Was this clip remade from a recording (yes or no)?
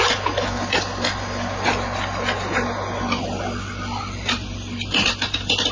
no